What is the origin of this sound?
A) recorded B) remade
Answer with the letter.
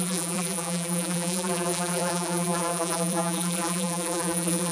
B